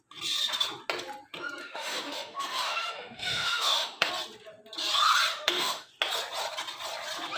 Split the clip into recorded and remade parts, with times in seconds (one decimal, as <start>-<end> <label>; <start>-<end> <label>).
0.0-1.6 recorded; 1.6-4.1 remade; 4.1-5.3 recorded; 5.3-5.9 remade; 5.9-7.4 recorded